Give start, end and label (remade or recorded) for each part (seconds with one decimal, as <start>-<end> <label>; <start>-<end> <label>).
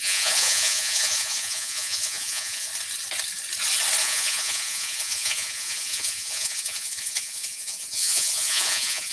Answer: 0.0-2.7 remade; 2.7-4.0 recorded; 4.0-9.1 remade